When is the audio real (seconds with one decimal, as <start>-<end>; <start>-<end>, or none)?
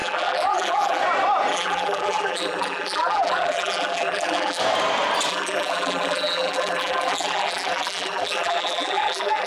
1.0-1.5; 4.6-5.3